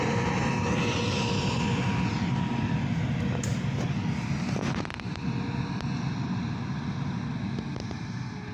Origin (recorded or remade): recorded